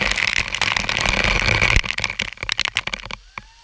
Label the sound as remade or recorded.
recorded